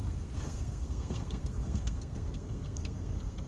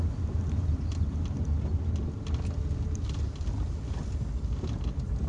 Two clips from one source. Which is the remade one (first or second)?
first